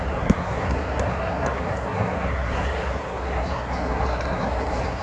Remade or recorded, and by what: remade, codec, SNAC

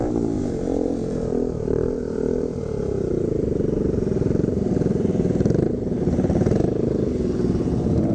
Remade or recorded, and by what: remade, vocoder, BigVGAN v2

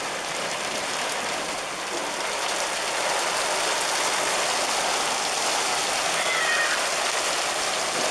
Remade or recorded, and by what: recorded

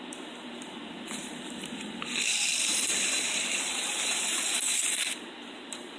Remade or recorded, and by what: remade, vocoder, BigVGAN v2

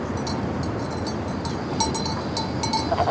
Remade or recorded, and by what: recorded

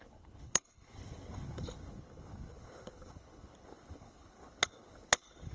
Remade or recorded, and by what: remade, codec, HILCodec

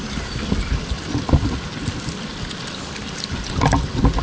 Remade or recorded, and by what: recorded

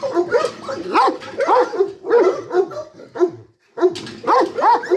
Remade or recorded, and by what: recorded